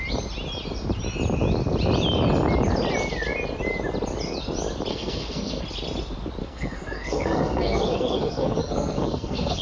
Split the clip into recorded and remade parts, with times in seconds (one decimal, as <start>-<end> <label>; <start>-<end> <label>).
0.0-4.9 recorded; 4.9-5.6 remade; 5.6-6.4 recorded; 6.4-9.6 remade